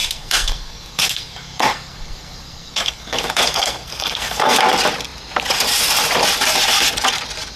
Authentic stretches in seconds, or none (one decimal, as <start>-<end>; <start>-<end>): 4.6-7.6